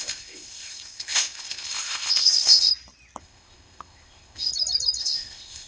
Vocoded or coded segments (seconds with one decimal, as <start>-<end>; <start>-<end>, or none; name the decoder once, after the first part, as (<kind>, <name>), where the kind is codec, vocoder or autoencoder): 0.0-2.7 (codec, ZipCodec); 3.2-4.5; 5.0-5.7